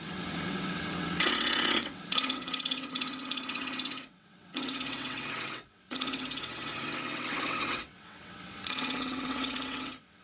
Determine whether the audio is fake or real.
fake